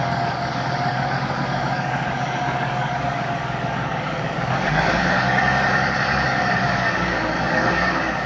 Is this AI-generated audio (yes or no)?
yes